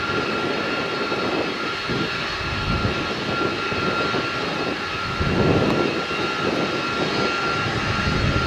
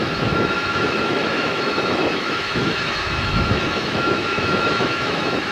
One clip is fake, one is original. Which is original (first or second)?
first